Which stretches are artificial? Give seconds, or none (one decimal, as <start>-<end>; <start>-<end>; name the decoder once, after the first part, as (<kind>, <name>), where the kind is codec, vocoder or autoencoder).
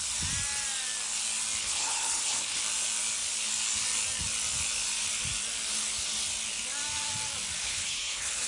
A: 1.6-2.6 (codec, HILCodec); 7.6-8.5